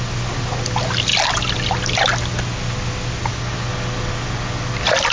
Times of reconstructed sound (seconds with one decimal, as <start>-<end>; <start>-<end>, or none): none